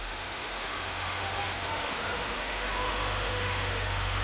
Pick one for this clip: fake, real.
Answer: fake